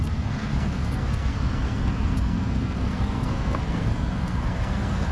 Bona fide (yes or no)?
no